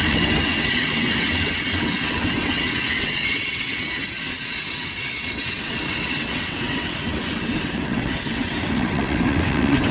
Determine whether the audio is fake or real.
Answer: fake